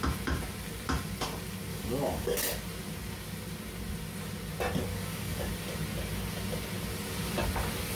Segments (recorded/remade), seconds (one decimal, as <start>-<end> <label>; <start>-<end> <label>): 0.0-1.7 recorded; 1.7-2.4 remade; 2.4-4.9 recorded; 4.9-5.5 remade; 5.5-8.0 recorded